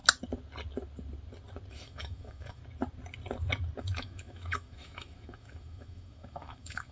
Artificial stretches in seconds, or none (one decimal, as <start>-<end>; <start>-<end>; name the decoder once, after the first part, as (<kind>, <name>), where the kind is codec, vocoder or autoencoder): 1.7-2.6 (autoencoder, DAC-VAE); 3.8-6.9

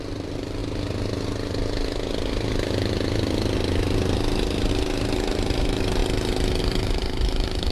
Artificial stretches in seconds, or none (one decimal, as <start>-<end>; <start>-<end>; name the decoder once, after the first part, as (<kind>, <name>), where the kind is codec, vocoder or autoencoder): 0.0-0.6 (vocoder, BigVGAN v2); 4.7-6.0; 6.6-7.7